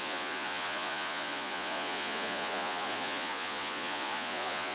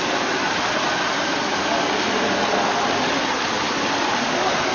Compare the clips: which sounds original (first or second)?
second